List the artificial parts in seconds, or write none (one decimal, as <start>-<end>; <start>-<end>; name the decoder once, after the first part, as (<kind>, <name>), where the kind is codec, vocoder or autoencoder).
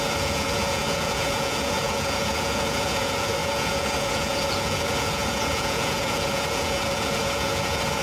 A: 0.0-8.0 (vocoder, Vocos)